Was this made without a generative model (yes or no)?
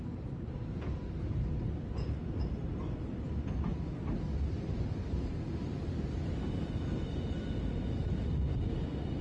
yes